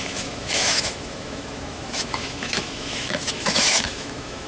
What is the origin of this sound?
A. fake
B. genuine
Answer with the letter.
A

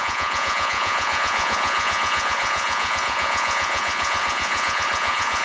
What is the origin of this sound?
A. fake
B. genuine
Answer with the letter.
A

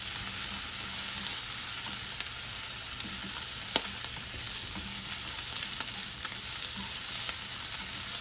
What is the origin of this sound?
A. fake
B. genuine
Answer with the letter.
B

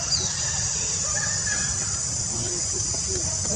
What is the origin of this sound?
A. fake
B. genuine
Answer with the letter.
A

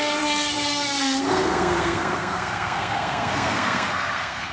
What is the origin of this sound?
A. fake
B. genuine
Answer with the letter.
A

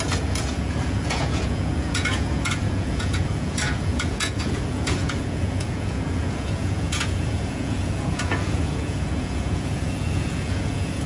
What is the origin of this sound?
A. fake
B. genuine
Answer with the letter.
A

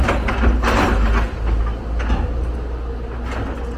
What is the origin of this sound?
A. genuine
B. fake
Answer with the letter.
A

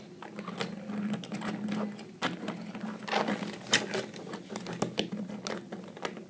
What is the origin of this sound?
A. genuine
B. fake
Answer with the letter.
A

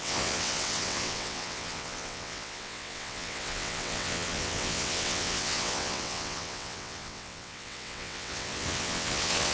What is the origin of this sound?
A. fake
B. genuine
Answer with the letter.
A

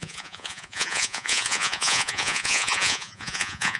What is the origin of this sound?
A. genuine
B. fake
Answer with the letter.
B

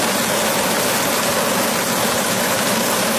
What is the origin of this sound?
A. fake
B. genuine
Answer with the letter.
B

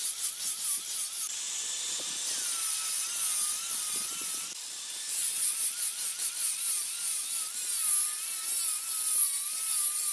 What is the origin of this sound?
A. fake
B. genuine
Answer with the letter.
B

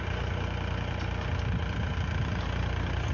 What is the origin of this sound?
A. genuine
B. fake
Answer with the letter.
A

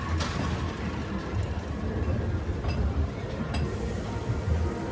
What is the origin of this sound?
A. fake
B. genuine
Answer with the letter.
B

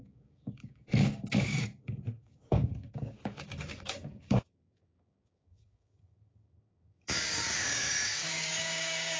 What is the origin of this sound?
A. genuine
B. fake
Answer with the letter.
B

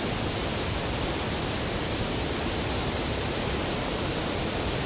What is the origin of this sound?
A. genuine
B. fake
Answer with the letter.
A